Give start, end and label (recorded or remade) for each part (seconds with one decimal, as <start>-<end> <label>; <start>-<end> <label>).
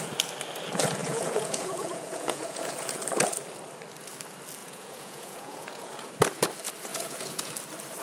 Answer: 0.0-1.0 recorded; 1.0-3.0 remade; 3.0-4.6 recorded; 4.6-6.1 remade; 6.1-6.9 recorded; 6.9-7.5 remade; 7.5-8.0 recorded